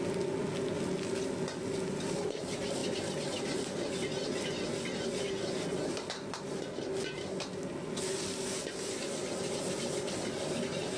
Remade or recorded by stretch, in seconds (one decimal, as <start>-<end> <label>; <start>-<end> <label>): 0.0-11.0 recorded